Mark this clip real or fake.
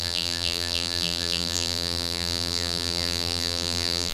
fake